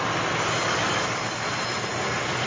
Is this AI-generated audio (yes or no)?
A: no